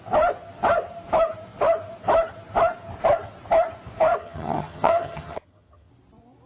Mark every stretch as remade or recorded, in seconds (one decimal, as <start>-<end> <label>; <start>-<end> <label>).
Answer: 0.0-4.2 recorded; 4.2-5.9 remade; 5.9-6.5 recorded